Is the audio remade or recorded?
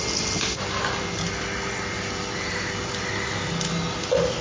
recorded